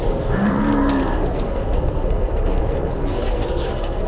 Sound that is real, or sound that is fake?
fake